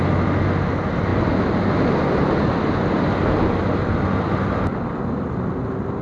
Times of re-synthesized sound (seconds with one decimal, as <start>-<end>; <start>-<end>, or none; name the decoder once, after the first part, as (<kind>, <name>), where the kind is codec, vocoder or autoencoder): none